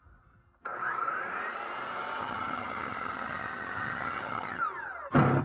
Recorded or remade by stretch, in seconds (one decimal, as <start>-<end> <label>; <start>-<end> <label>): 0.0-2.2 recorded; 2.2-4.6 remade; 4.6-5.4 recorded